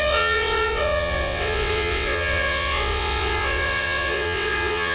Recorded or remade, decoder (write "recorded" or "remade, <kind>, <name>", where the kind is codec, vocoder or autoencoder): remade, vocoder, WaveNeXt